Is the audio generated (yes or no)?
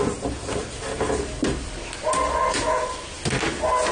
no